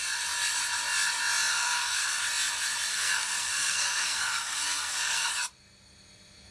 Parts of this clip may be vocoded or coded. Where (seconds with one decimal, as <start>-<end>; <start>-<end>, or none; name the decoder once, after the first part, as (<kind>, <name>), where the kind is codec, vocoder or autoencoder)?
1.5-2.2 (codec, SNAC); 2.9-5.3